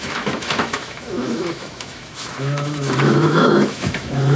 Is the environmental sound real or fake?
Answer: fake